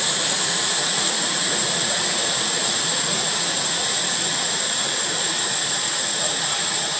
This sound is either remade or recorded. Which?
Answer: remade